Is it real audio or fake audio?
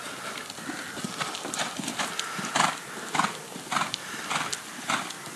real